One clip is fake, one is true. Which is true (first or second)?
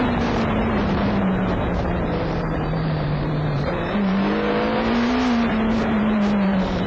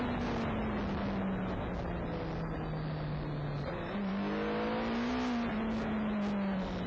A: second